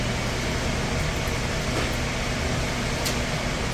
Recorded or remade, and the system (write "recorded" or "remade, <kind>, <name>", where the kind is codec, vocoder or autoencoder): recorded